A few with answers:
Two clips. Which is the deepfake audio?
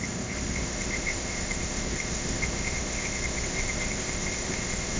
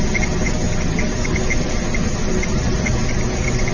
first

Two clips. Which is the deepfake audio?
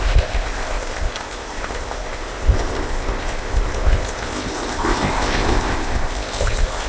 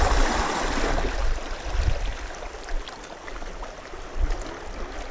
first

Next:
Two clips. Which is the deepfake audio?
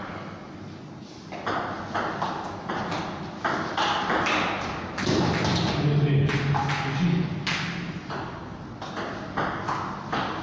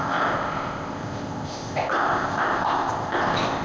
second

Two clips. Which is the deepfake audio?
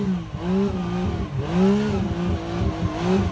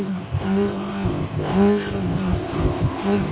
second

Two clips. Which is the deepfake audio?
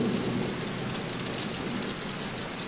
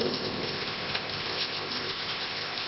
second